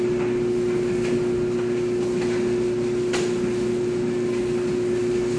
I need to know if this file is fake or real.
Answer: real